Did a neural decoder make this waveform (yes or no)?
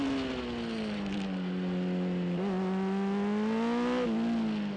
no